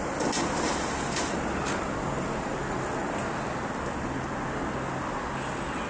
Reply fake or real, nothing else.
real